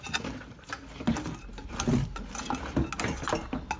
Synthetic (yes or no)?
no